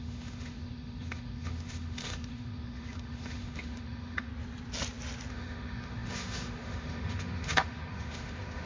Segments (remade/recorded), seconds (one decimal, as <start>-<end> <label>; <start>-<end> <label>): 0.0-4.3 remade; 4.3-5.3 recorded; 5.3-8.7 remade